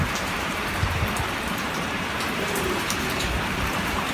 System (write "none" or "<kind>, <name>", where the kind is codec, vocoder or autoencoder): vocoder, BigVGAN v2